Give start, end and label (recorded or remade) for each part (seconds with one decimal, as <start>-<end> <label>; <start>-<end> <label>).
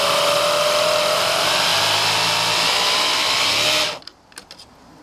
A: 0.0-5.0 recorded